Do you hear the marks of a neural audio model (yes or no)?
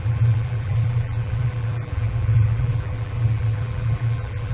yes